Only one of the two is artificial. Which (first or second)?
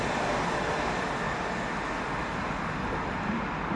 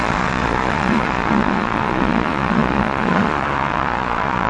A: second